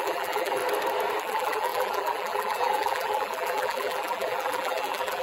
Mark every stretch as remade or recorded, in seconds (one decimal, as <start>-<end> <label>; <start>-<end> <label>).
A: 0.0-0.6 remade; 0.6-1.2 recorded; 1.2-5.2 remade